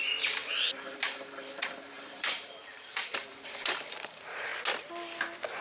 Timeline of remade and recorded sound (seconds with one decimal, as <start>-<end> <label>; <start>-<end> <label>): 0.0-4.5 remade; 4.5-5.6 recorded